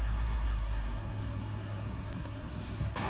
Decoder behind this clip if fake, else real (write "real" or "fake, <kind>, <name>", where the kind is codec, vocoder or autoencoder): fake, codec, SNAC